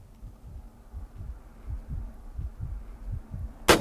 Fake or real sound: real